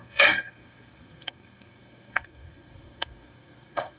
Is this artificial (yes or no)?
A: yes